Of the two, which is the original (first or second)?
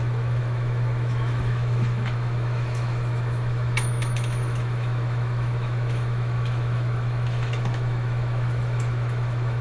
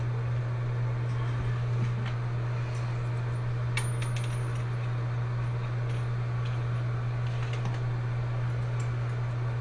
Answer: second